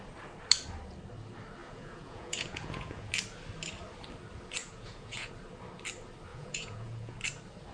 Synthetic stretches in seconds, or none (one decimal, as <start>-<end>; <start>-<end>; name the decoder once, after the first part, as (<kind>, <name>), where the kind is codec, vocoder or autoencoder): 1.6-3.1 (vocoder, Vocos); 4.6-5.3; 6.3-7.2